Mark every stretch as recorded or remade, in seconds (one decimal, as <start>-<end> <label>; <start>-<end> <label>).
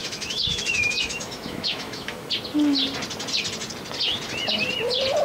0.0-2.3 remade; 2.3-5.2 recorded